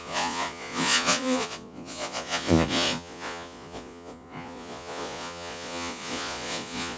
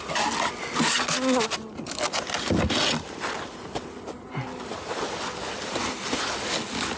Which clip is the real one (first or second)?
second